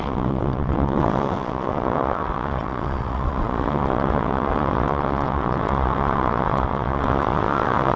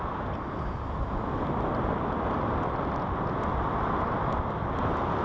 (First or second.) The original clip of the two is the second